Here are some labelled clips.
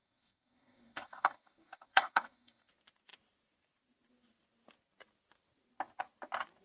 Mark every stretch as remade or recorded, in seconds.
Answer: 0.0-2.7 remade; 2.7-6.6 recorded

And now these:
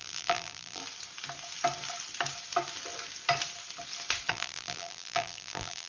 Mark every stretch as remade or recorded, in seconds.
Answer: 0.0-0.8 remade; 0.8-4.3 recorded; 4.3-5.9 remade

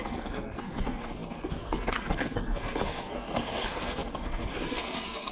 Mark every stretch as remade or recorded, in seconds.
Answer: 0.0-5.3 remade

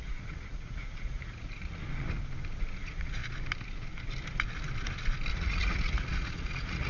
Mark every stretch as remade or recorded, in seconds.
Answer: 0.0-1.8 remade; 1.8-2.7 recorded; 2.7-3.2 remade; 3.2-5.3 recorded; 5.3-6.9 remade

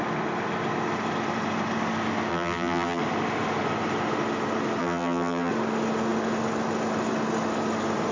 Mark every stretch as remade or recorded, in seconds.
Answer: 0.0-2.3 recorded; 2.3-3.0 remade; 3.0-4.8 recorded; 4.8-5.5 remade; 5.5-8.1 recorded